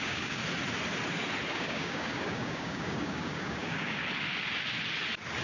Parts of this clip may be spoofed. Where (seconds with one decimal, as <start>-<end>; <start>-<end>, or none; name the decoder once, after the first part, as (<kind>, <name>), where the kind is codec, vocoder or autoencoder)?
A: 0.0-0.4 (codec, DAC); 1.5-4.0